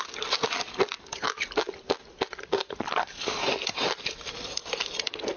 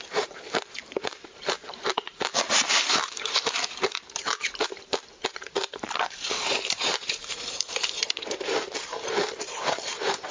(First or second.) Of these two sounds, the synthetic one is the second